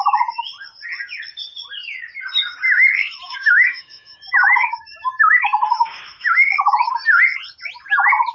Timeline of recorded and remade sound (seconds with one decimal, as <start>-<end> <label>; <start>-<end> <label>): 0.0-3.0 recorded; 3.0-6.9 remade; 6.9-8.3 recorded